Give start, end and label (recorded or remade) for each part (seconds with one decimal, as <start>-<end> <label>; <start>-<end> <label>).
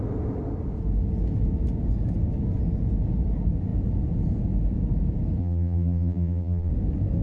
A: 0.0-5.4 recorded; 5.4-6.7 remade; 6.7-7.2 recorded